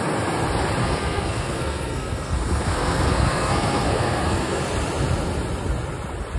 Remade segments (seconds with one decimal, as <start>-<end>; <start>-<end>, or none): 0.8-4.6

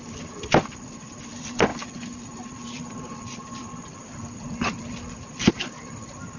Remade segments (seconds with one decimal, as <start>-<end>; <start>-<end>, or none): none